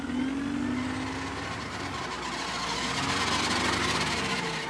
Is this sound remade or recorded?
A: recorded